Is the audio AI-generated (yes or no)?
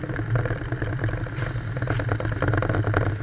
no